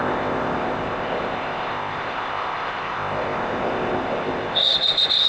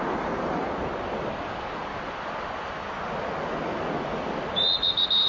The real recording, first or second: second